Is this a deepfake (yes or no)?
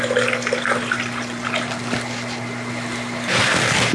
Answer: yes